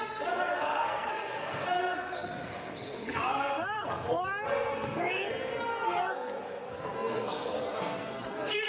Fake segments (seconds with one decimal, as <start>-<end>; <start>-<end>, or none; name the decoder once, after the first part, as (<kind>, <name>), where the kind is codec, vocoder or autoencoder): 0.0-8.7 (codec, SNAC)

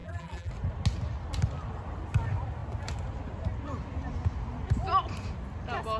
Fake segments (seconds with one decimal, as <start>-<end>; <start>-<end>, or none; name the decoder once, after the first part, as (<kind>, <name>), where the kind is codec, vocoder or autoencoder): 0.0-0.5 (vocoder, BigVGAN v2)

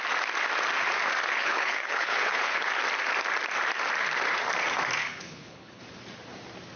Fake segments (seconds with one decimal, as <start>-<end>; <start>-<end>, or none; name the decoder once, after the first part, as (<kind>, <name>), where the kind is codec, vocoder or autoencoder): 1.4-2.8 (codec, HILCodec); 5.0-5.8

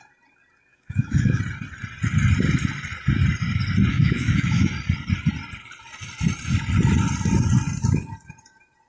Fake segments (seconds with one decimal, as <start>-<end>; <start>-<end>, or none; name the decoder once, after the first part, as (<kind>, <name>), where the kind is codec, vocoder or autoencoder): 0.7-1.4 (autoencoder, DAC-VAE); 3.9-4.7

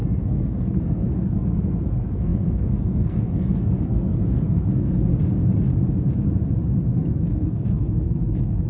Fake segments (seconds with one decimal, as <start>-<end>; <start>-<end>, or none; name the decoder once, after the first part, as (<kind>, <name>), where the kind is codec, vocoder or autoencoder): 0.0-5.1 (codec, SNAC); 6.9-8.7

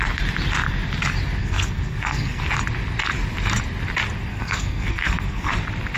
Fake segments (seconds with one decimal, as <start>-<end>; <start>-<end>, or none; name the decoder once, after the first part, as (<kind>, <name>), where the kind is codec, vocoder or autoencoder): 1.4-2.4 (codec, SNAC); 4.3-5.5

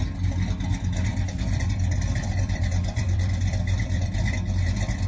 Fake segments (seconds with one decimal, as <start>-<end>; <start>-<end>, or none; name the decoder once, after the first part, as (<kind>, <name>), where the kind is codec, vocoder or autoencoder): 1.1-4.2 (vocoder, BigVGAN v2)